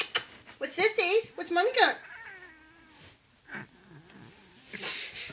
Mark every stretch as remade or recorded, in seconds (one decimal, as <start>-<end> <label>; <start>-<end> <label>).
0.0-4.4 recorded; 4.4-5.3 remade